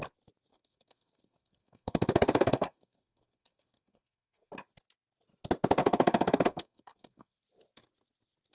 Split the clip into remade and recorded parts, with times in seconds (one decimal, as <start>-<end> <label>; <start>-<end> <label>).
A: 0.0-0.5 recorded; 0.5-4.5 remade; 4.5-5.8 recorded; 5.8-7.4 remade; 7.4-8.5 recorded

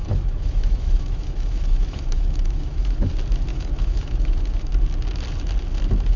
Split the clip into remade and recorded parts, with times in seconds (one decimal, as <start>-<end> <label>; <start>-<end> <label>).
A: 0.0-3.1 remade; 3.1-3.5 recorded; 3.5-4.7 remade; 4.7-6.2 recorded

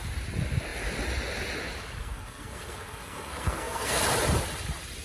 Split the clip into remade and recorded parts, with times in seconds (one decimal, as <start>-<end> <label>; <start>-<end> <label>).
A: 0.0-2.0 recorded; 2.0-4.0 remade; 4.0-5.0 recorded

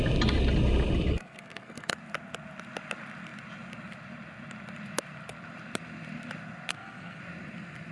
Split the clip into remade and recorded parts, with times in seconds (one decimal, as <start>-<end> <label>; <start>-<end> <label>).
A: 0.0-1.1 recorded; 1.1-2.0 remade; 2.0-6.7 recorded; 6.7-7.2 remade; 7.2-7.9 recorded

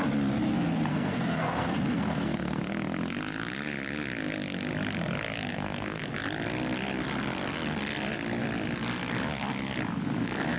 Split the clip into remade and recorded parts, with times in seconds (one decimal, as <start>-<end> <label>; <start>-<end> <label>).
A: 0.0-0.9 recorded; 0.9-2.6 remade; 2.6-5.5 recorded; 5.5-6.0 remade; 6.0-10.6 recorded